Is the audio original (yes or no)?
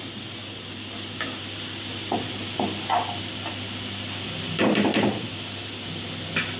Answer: yes